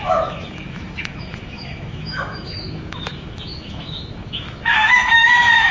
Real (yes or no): no